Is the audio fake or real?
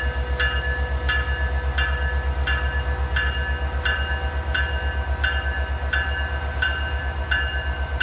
real